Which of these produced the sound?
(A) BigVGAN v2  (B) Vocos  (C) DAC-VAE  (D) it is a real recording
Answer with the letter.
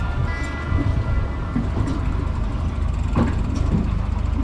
D